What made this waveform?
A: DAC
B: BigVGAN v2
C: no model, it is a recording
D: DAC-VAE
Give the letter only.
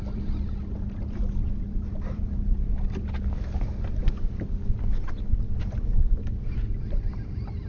B